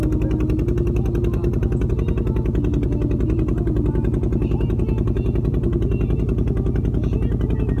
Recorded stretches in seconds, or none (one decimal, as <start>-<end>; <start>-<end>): 0.0-7.8